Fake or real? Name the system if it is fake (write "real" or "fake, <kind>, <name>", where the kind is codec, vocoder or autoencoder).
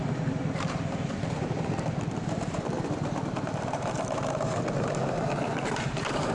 fake, vocoder, BigVGAN v2